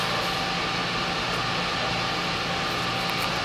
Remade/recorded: recorded